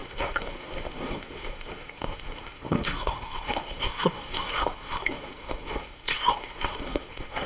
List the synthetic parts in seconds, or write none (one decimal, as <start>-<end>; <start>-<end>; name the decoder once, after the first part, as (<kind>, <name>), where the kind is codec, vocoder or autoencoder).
0.0-7.5 (codec, SNAC)